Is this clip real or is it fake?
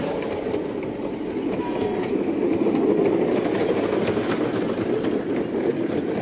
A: real